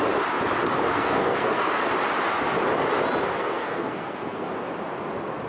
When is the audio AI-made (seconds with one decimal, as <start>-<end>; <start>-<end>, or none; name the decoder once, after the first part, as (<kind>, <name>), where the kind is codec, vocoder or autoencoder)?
0.9-1.8 (codec, SNAC); 3.3-4.5